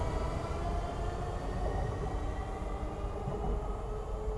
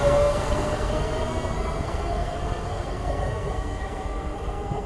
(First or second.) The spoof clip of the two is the second